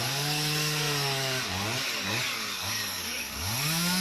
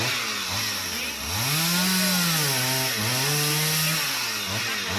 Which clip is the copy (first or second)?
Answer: first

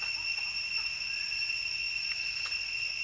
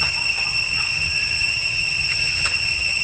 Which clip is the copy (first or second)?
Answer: second